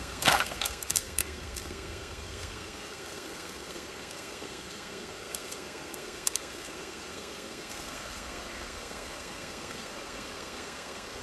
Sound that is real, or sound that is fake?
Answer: fake